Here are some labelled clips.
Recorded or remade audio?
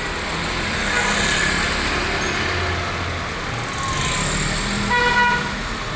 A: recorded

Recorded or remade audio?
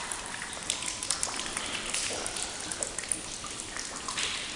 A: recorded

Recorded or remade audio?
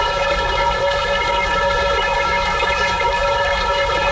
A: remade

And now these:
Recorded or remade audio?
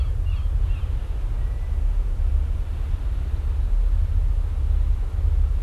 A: recorded